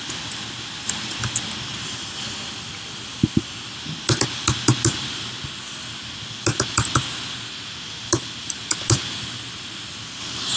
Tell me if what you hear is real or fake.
real